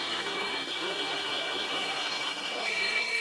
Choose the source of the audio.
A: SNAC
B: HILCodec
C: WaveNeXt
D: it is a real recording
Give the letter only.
A